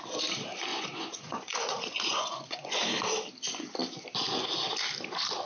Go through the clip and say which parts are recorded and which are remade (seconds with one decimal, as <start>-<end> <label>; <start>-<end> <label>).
0.0-0.7 recorded; 0.7-2.8 remade; 2.8-5.5 recorded